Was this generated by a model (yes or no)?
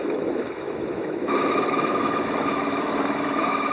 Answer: yes